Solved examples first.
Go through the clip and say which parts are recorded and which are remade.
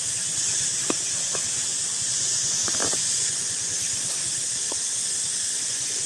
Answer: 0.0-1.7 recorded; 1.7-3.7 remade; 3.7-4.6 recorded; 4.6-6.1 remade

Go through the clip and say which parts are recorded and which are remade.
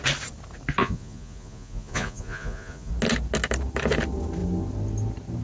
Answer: 0.0-0.8 recorded; 0.8-2.9 remade; 2.9-5.4 recorded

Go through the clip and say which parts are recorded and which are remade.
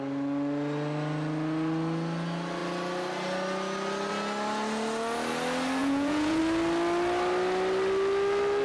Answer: 0.0-5.8 recorded; 5.8-6.4 remade; 6.4-8.6 recorded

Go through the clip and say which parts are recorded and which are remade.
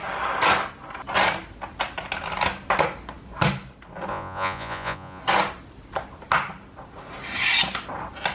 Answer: 0.0-4.1 recorded; 4.1-5.2 remade; 5.2-8.3 recorded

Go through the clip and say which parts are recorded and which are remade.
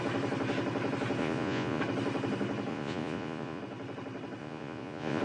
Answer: 0.0-1.2 recorded; 1.2-1.8 remade; 1.8-2.7 recorded; 2.7-3.6 remade; 3.6-4.4 recorded; 4.4-5.2 remade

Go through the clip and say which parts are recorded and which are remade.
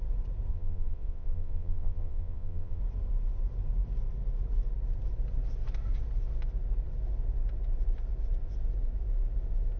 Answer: 0.0-0.5 recorded; 0.5-2.8 remade; 2.8-9.8 recorded